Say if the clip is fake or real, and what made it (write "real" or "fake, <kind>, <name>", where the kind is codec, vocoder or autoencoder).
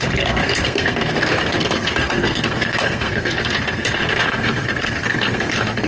fake, codec, SNAC